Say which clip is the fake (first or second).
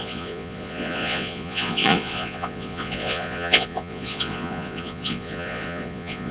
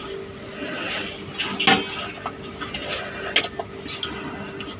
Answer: first